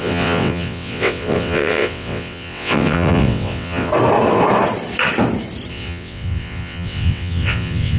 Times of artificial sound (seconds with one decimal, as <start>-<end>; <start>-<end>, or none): 0.0-3.9; 5.7-8.0